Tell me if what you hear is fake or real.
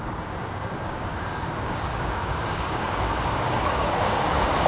fake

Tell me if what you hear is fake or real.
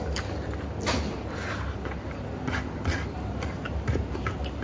real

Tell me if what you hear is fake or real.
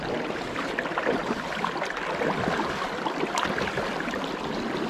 real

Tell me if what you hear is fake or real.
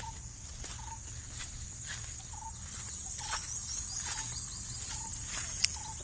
real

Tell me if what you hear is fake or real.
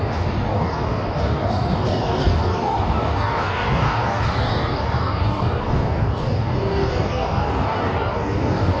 fake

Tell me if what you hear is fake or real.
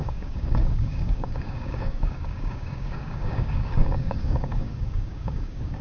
fake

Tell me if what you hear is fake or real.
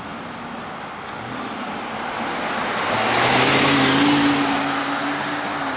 real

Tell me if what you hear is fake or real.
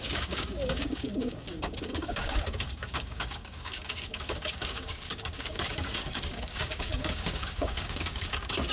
fake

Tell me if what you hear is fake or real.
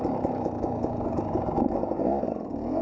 fake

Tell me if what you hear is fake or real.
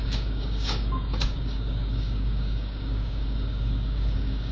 fake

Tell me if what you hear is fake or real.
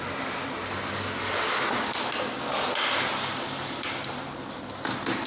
real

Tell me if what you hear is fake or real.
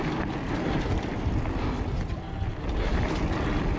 real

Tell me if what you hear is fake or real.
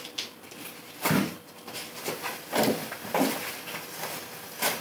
real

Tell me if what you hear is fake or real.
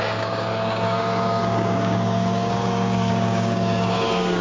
fake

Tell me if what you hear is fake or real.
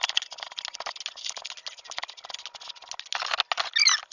real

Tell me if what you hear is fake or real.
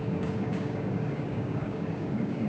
fake